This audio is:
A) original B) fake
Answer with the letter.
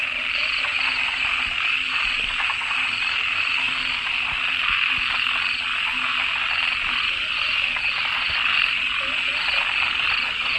A